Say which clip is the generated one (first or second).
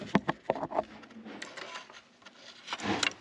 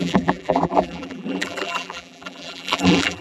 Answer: second